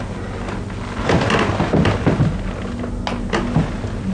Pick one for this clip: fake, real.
real